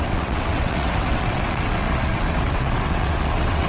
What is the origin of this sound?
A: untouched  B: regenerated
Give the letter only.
B